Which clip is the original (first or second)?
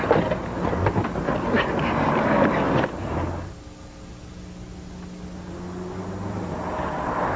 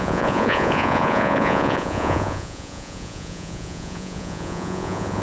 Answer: first